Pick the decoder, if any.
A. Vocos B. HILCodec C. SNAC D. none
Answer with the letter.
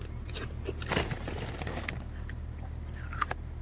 D